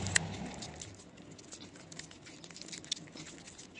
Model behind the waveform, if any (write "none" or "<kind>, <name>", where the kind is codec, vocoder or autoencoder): none